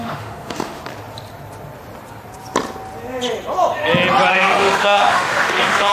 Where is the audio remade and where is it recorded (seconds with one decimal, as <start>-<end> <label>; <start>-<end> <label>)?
0.0-0.8 remade; 0.8-4.3 recorded; 4.3-5.9 remade